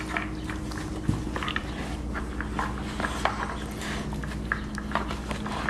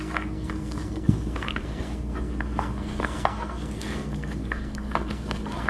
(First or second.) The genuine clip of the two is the first